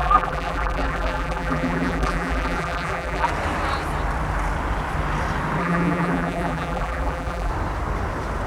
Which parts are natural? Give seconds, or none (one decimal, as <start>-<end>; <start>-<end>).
3.3-5.6; 7.5-8.5